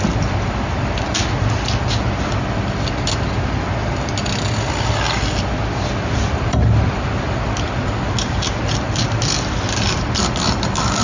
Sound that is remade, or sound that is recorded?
recorded